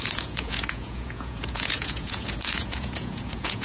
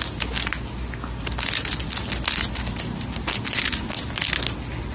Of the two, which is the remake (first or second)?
first